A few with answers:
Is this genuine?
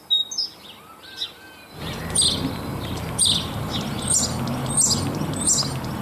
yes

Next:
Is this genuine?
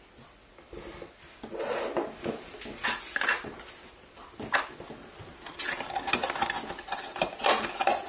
yes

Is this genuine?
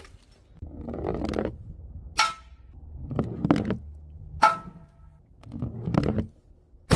yes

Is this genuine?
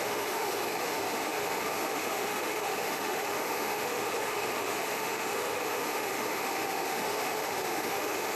no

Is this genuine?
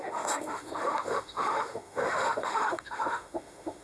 no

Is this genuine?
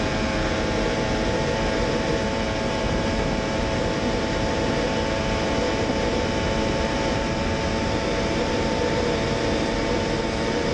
yes